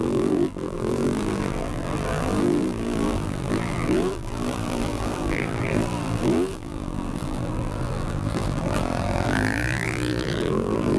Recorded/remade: remade